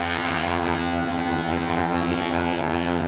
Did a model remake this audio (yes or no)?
yes